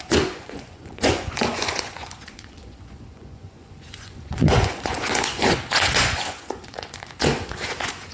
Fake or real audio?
fake